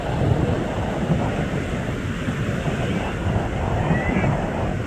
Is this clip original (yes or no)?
yes